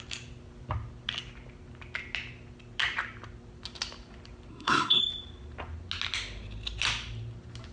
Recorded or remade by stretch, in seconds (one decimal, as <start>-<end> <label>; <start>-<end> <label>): 0.0-4.5 recorded; 4.5-5.0 remade; 5.0-7.7 recorded